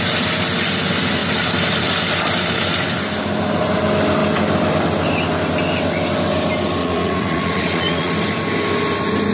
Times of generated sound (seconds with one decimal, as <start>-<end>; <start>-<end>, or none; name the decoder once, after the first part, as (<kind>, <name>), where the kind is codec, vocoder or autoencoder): 6.8-8.1 (vocoder, Vocos)